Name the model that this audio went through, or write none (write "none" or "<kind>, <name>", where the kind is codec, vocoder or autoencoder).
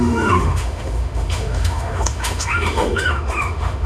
autoencoder, DAC-VAE